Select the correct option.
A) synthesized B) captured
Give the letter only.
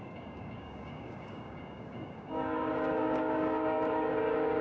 A